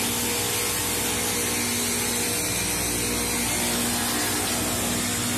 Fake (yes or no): no